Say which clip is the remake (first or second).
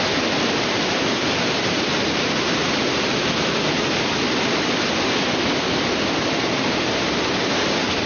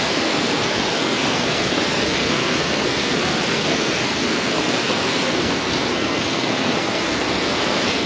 second